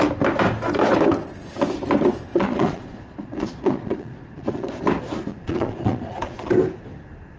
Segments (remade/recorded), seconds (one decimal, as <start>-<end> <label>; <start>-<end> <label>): 0.0-2.3 recorded; 2.3-4.8 remade; 4.8-5.3 recorded; 5.3-6.5 remade; 6.5-7.4 recorded